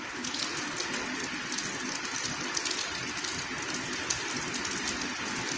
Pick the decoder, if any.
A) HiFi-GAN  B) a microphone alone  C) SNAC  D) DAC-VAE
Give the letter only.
B